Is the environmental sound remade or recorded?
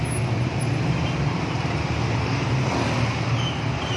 recorded